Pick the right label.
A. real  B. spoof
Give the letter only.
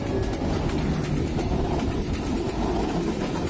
A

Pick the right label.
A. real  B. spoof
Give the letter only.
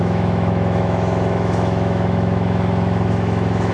B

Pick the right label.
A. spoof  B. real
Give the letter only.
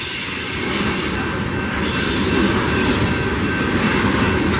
B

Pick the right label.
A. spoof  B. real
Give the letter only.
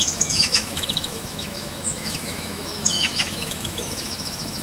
A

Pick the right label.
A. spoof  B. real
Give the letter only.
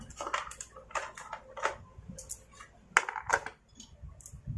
B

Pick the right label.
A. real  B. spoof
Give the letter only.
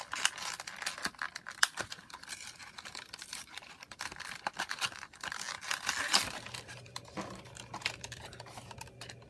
A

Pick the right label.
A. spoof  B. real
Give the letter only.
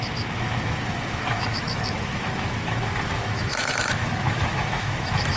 A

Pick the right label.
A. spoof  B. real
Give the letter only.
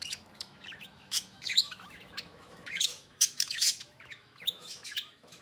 A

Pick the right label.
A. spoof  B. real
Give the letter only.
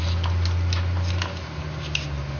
B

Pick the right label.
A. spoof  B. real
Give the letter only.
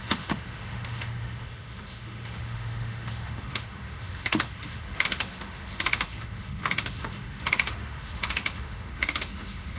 A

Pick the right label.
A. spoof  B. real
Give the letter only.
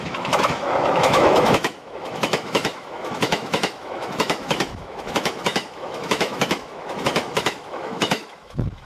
A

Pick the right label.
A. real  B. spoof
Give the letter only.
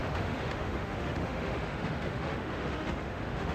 B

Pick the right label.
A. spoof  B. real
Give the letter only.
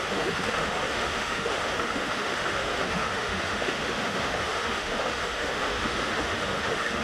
A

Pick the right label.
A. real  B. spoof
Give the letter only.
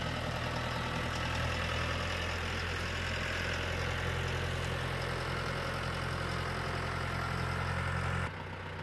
A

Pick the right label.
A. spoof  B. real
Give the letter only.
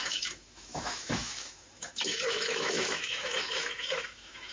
A